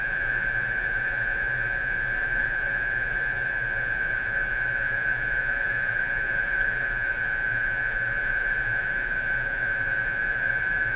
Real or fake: fake